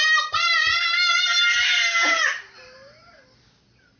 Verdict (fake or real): real